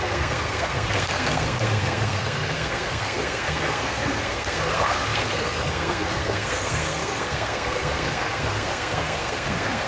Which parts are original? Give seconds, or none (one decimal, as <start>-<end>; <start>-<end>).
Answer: none